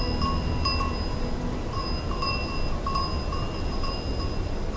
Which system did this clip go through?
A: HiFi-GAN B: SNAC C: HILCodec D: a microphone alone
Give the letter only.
D